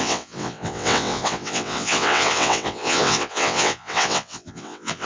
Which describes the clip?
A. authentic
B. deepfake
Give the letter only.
B